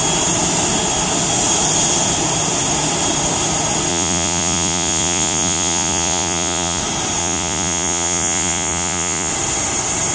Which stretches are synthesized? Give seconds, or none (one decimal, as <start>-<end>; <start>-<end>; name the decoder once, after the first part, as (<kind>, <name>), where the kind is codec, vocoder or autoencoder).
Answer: 3.9-6.8 (vocoder, Vocos); 7.2-9.3